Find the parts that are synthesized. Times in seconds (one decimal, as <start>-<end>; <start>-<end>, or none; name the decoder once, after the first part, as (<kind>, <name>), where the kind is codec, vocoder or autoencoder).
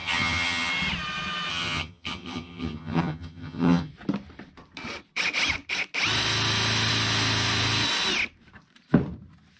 0.0-0.7 (vocoder, HiFi-GAN); 1.5-3.9